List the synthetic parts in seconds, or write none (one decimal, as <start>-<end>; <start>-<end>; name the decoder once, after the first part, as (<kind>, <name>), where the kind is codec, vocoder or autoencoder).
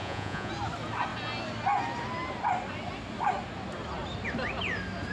0.0-0.5 (vocoder, Vocos)